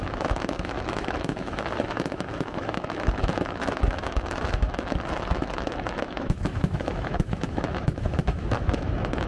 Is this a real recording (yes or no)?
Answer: no